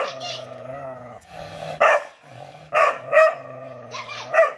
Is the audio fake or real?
fake